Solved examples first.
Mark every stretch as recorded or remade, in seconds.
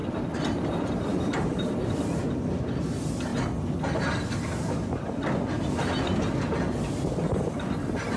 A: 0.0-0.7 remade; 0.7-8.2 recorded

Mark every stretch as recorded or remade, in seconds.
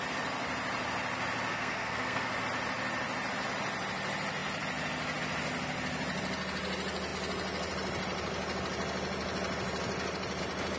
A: 0.0-1.5 recorded; 1.5-2.3 remade; 2.3-10.8 recorded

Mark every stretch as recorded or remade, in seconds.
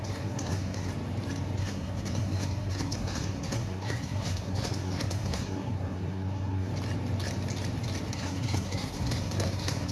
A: 0.0-0.9 remade; 0.9-1.6 recorded; 1.6-6.7 remade; 6.7-8.1 recorded; 8.1-9.9 remade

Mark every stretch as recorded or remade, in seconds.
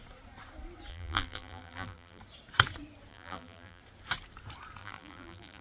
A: 0.0-0.9 recorded; 0.9-2.2 remade; 2.2-3.1 recorded; 3.1-3.8 remade; 3.8-4.8 recorded; 4.8-5.6 remade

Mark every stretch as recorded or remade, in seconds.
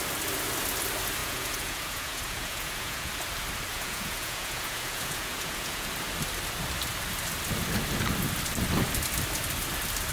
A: 0.0-1.2 recorded; 1.2-3.1 remade; 3.1-3.7 recorded; 3.7-5.9 remade; 5.9-10.1 recorded